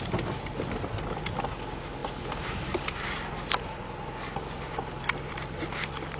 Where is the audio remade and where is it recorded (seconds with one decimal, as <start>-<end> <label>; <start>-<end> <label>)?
0.0-2.0 recorded; 2.0-5.3 remade; 5.3-6.2 recorded